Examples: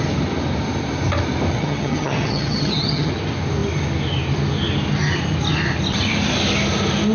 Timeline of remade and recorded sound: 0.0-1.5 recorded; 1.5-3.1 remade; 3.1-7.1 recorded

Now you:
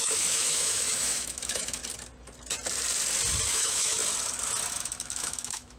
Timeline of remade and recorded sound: 0.0-1.8 remade; 1.8-3.5 recorded; 3.5-4.0 remade; 4.0-4.7 recorded; 4.7-5.8 remade

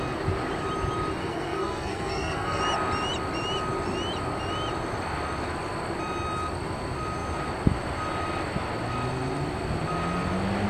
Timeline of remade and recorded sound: 0.0-1.2 recorded; 1.2-2.6 remade; 2.6-10.7 recorded

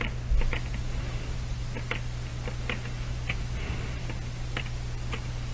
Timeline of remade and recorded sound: 0.0-5.5 recorded

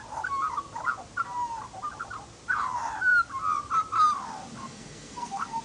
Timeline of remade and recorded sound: 0.0-4.6 recorded; 4.6-5.6 remade

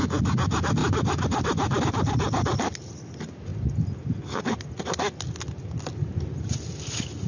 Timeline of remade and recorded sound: 0.0-0.8 recorded; 0.8-1.8 remade; 1.8-7.3 recorded